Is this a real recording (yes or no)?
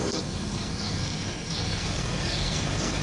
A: no